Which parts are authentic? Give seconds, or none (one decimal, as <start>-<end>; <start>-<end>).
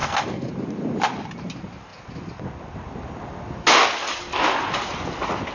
0.5-5.5